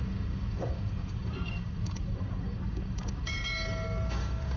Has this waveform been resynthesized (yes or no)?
yes